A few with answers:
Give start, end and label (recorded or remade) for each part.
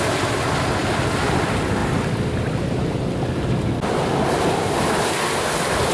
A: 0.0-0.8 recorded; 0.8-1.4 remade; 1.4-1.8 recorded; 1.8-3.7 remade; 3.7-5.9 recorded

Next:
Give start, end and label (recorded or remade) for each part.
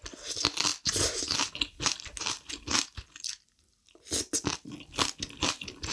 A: 0.0-5.9 recorded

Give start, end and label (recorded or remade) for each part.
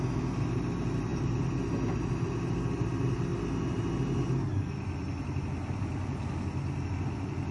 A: 0.0-7.5 recorded